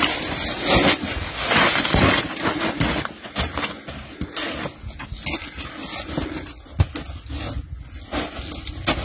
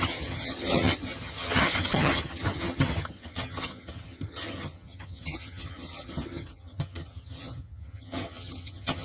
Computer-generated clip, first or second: second